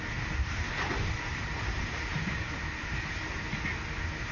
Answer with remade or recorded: recorded